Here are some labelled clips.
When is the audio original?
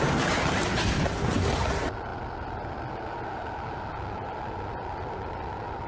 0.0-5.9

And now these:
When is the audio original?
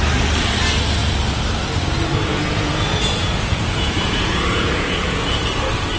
0.0-2.3; 5.4-6.0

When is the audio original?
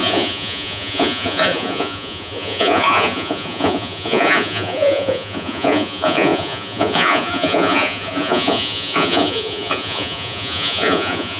none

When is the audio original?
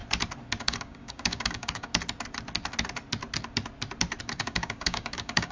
0.0-0.6; 1.9-4.2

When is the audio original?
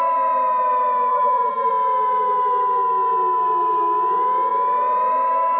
0.0-1.1; 1.7-5.6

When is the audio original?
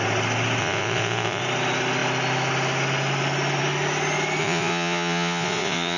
0.0-0.6; 1.4-4.4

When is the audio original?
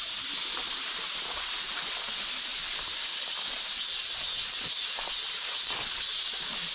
0.0-0.6; 1.3-2.5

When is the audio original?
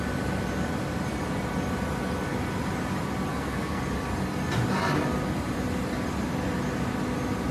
0.0-3.3; 3.8-7.5